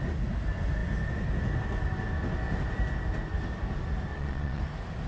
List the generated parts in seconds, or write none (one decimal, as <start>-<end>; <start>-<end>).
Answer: 4.1-4.6

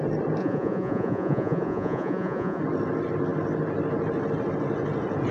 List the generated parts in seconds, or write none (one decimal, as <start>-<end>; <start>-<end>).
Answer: 0.4-2.6

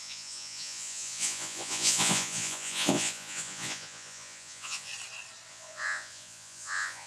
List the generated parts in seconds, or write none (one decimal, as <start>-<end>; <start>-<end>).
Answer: 0.0-4.9; 5.5-7.1

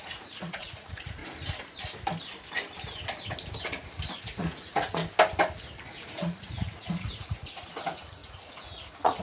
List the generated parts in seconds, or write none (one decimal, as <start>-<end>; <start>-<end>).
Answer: 0.0-1.2; 4.2-5.0; 5.9-9.2

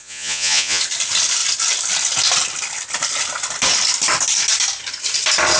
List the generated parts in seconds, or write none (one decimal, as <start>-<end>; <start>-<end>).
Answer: 0.0-0.8

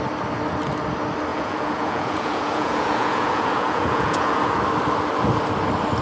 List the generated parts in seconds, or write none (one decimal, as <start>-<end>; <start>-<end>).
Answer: 1.3-4.6

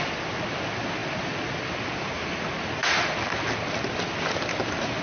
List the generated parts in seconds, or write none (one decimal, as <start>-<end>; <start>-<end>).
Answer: none